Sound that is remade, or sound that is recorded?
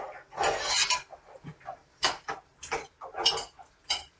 recorded